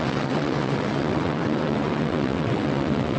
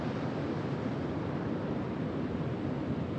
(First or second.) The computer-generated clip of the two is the first